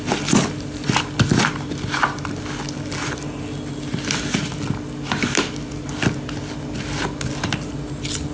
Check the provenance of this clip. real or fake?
real